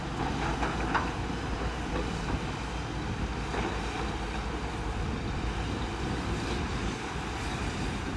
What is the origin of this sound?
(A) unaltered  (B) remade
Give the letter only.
A